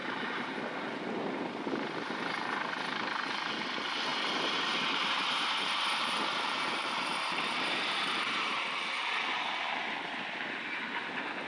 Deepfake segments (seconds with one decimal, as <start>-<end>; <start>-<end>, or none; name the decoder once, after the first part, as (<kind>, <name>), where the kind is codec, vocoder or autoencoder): 0.0-0.6 (vocoder, BigVGAN v2); 4.1-8.9